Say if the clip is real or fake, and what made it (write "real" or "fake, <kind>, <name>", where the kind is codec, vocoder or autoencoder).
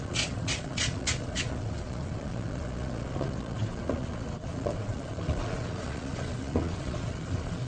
fake, vocoder, Vocos